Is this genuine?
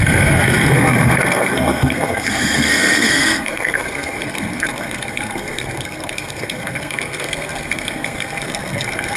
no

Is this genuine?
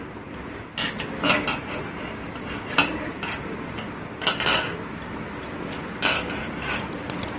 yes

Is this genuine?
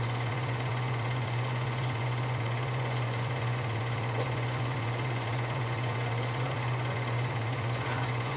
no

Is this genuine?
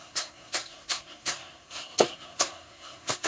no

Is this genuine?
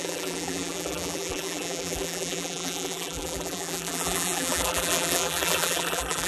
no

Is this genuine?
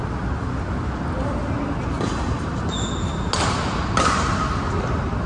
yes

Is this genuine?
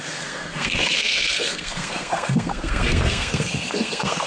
no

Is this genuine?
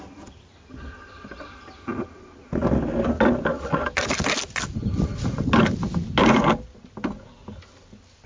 yes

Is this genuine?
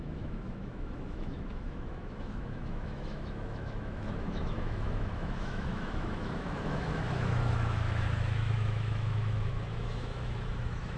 no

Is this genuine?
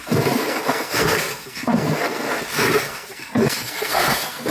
no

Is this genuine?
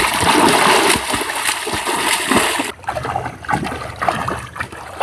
yes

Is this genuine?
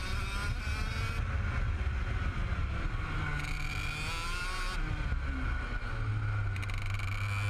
yes